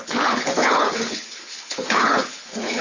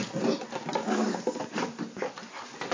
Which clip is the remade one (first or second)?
first